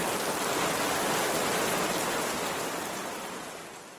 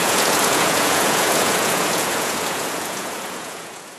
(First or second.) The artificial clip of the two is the second